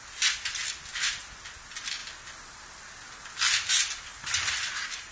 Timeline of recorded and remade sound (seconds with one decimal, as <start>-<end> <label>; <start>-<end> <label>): 0.0-5.1 recorded